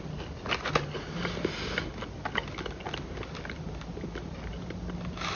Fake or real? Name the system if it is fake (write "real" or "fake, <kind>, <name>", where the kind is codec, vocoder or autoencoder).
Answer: real